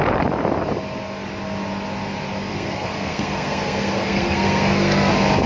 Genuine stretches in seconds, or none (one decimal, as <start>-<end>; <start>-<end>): 0.0-2.5; 5.1-5.5